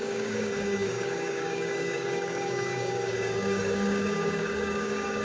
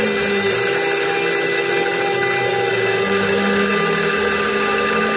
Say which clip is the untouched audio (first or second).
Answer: second